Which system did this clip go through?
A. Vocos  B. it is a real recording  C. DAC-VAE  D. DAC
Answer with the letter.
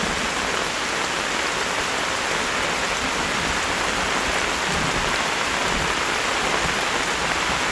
B